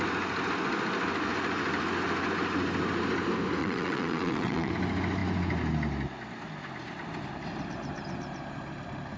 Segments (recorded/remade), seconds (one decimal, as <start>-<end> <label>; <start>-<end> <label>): 0.0-3.6 recorded; 3.6-4.7 remade; 4.7-9.2 recorded